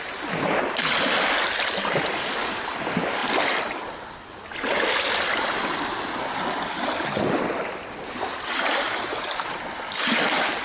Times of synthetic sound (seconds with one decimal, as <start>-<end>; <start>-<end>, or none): none